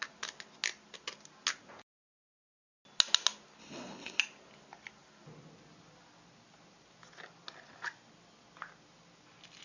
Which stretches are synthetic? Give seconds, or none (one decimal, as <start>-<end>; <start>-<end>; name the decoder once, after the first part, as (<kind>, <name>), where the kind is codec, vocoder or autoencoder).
3.6-4.2 (codec, HILCodec)